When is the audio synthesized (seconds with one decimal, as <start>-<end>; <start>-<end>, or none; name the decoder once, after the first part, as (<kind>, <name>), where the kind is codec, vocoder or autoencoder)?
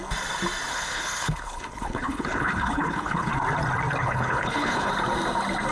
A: 0.7-3.3 (codec, HILCodec); 4.0-4.9